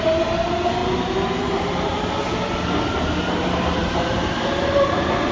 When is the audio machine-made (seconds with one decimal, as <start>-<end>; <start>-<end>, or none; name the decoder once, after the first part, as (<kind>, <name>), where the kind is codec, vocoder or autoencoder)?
none

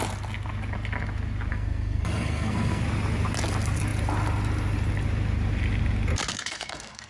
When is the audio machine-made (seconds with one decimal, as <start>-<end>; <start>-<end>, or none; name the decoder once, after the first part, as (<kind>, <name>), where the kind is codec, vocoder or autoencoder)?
1.5-2.8 (codec, SNAC); 6.3-7.1

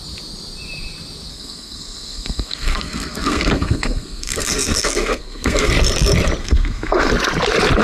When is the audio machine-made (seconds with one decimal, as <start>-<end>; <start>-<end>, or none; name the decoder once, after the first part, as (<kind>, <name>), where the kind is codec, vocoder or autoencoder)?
1.3-5.7 (codec, SNAC); 6.4-7.1

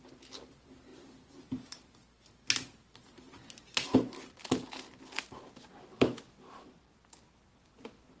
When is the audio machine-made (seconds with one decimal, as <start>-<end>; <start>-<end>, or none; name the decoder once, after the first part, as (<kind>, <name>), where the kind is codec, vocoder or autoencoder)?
none

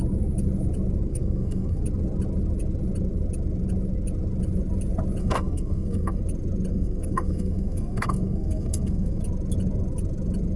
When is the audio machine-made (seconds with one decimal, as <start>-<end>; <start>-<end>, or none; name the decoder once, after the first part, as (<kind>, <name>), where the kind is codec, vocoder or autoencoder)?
1.1-1.8 (codec, SNAC); 5.2-6.2; 6.7-9.2